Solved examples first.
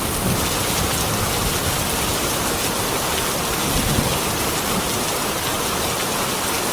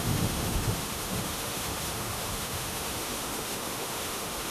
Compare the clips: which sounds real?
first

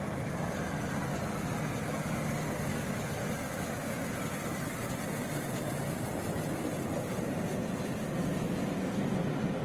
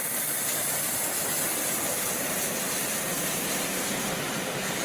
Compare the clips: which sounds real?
first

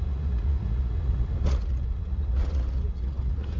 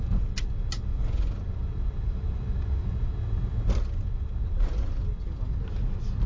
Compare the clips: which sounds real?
second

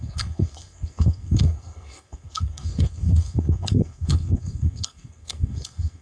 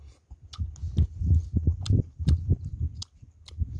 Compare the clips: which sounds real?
second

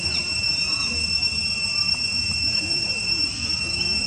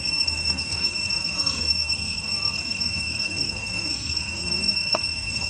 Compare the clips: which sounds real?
first